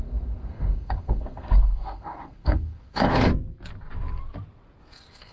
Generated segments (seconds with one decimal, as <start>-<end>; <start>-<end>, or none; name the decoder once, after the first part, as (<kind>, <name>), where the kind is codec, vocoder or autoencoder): 0.0-3.3 (codec, SNAC); 4.8-5.3